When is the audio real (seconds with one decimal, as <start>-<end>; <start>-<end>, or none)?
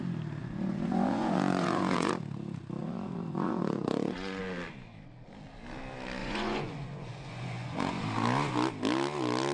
0.0-0.4; 2.1-2.8; 4.4-6.2; 8.0-9.5